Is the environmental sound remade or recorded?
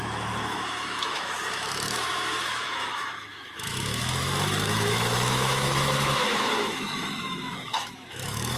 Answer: remade